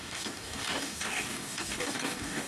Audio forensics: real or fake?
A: fake